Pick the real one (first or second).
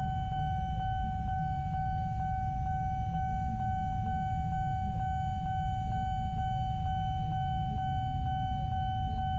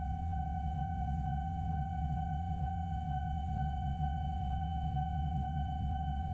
first